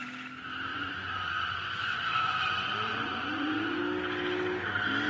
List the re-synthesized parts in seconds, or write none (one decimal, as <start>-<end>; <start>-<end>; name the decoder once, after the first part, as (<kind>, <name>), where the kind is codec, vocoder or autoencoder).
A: 0.7-3.8 (vocoder, Vocos)